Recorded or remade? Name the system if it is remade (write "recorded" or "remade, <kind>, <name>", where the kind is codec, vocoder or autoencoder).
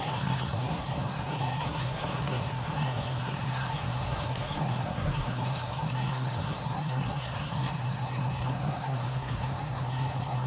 remade, codec, SNAC